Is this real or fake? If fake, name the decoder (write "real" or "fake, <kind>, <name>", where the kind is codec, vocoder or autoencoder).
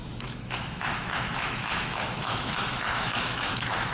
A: fake, autoencoder, DAC-VAE